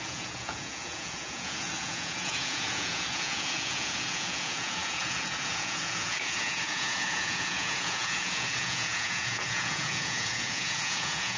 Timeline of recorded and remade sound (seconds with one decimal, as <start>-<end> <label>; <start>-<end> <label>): 0.0-11.4 remade